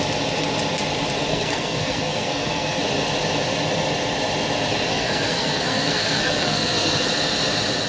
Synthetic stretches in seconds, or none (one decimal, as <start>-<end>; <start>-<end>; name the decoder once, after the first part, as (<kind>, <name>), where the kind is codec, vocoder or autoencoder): 1.3-2.8 (codec, SNAC); 4.9-7.1